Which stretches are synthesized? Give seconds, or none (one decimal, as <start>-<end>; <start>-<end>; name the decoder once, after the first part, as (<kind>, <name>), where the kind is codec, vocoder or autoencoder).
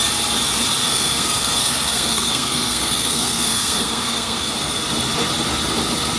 0.8-4.5 (codec, SNAC)